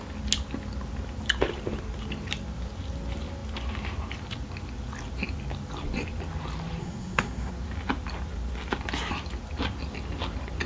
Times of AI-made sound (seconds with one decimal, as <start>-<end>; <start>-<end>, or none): 6.8-7.5